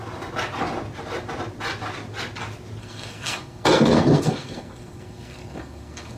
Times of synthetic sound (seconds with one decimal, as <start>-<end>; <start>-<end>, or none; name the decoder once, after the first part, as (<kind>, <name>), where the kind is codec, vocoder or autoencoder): 2.8-6.2 (codec, SNAC)